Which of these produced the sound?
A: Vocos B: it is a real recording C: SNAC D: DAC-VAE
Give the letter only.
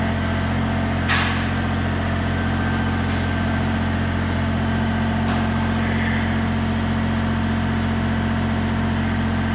B